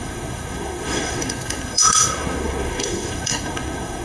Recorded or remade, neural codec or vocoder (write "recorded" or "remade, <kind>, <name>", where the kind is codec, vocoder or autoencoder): remade, codec, SNAC